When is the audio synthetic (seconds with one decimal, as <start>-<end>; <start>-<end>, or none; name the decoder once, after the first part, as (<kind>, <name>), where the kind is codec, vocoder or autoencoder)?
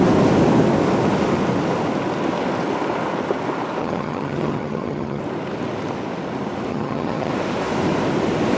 3.8-5.2 (vocoder, HiFi-GAN); 6.7-7.3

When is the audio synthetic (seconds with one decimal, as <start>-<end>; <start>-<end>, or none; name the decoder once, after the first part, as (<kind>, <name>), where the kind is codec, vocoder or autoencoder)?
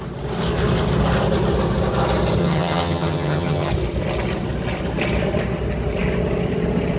2.4-3.7 (vocoder, HiFi-GAN)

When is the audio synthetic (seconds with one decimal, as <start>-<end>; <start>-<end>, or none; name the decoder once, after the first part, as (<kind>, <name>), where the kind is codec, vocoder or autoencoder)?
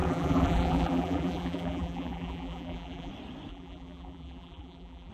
0.0-3.1 (vocoder, BigVGAN v2); 3.5-5.1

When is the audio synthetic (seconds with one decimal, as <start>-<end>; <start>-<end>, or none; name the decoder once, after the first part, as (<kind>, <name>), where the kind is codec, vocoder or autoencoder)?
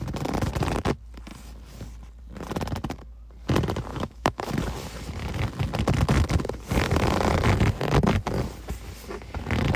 3.9-4.5 (autoencoder, DAC-VAE)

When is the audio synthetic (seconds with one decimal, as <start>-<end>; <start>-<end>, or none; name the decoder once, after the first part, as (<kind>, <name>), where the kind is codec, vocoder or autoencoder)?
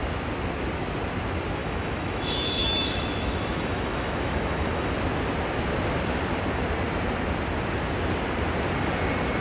1.6-4.9 (autoencoder, DAC-VAE)